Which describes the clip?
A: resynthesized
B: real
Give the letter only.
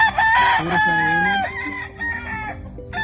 B